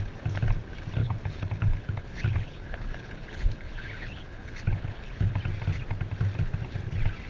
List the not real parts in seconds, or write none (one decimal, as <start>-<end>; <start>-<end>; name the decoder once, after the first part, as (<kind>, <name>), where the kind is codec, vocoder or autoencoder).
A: 1.0-5.4 (codec, HILCodec)